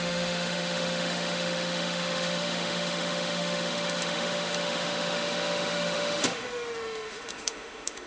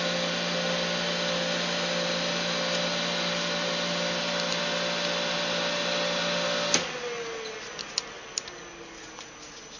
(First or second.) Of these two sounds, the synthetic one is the first